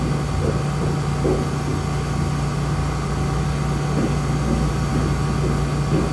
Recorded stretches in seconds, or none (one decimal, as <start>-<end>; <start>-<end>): 0.0-6.1